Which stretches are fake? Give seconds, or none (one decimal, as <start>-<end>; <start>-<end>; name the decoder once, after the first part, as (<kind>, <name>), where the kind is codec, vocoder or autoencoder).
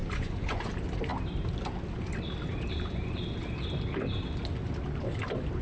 0.0-0.7 (vocoder, Vocos)